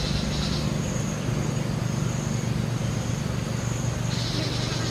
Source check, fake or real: real